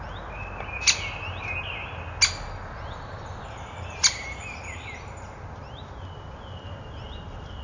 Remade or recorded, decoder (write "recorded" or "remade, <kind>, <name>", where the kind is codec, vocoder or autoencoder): recorded